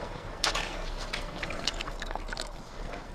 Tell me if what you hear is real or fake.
fake